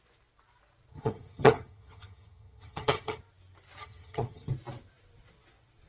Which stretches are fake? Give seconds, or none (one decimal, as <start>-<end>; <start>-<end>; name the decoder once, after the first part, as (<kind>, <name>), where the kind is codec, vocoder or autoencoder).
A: 0.9-3.2 (vocoder, HiFi-GAN); 3.8-4.5